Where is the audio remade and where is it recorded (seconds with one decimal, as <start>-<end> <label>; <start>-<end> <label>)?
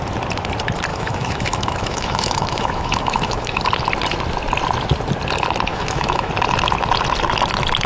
0.0-0.9 recorded; 0.9-3.6 remade; 3.6-5.7 recorded; 5.7-6.3 remade; 6.3-7.9 recorded